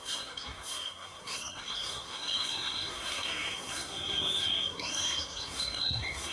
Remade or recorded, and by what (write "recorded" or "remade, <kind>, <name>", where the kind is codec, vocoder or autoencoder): remade, codec, SNAC